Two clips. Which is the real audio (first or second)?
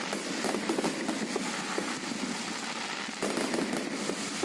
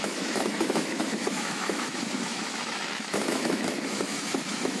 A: first